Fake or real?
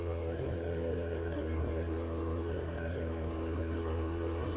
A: fake